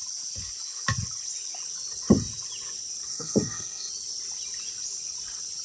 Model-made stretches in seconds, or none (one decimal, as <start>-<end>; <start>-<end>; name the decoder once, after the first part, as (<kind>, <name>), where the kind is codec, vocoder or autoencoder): 3.1-3.9 (codec, SNAC)